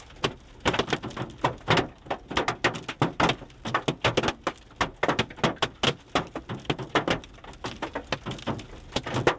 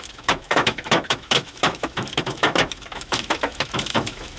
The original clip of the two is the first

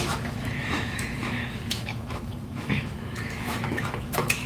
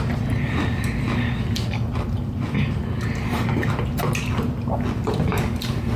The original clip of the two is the second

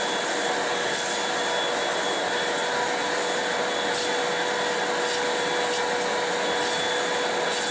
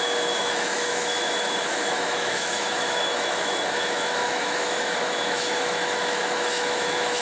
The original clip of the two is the first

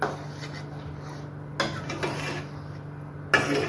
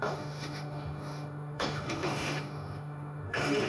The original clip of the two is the first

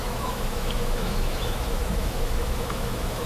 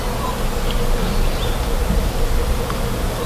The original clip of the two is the second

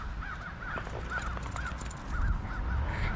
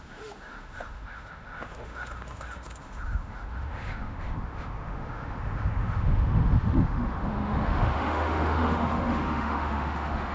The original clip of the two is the first